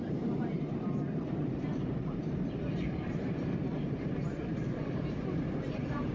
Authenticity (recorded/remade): remade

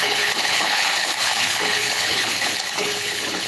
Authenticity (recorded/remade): remade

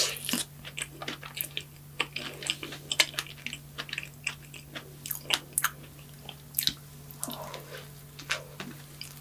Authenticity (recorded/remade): recorded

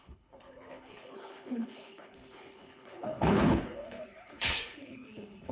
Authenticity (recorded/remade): remade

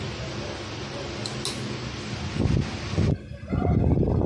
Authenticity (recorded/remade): recorded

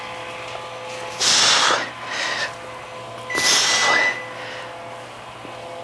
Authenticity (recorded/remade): recorded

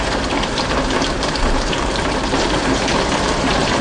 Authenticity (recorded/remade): remade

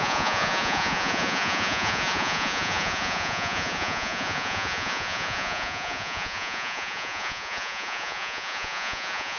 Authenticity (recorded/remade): remade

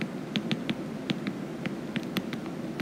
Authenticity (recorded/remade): recorded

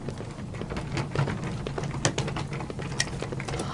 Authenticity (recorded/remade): recorded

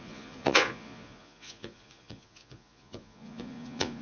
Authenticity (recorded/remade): remade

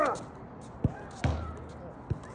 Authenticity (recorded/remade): recorded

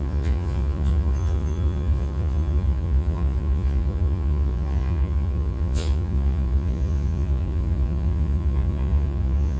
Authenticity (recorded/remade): remade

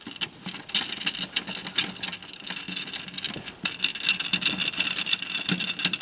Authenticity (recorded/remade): recorded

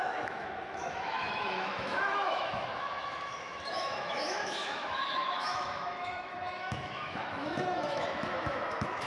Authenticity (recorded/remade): remade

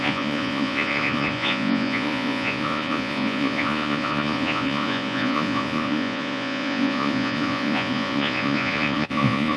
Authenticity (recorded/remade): remade